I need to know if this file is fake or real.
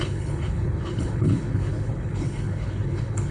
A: fake